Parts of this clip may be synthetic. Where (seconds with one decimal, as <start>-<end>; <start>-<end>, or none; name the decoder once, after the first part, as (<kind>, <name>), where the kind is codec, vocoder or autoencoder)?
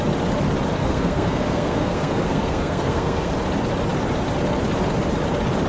0.8-3.3 (codec, SNAC)